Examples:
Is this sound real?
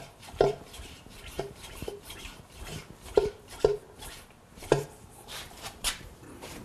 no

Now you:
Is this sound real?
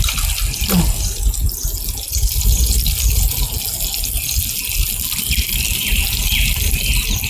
yes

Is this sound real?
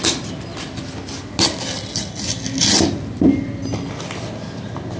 yes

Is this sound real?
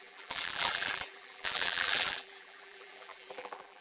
no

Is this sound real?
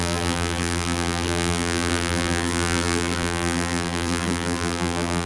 no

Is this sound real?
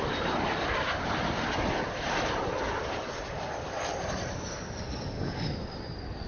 no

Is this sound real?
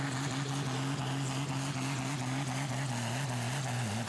yes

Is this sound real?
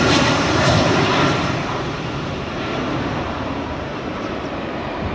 no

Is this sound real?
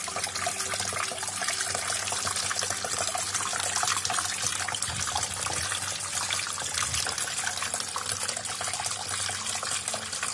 yes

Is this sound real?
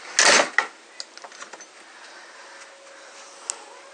yes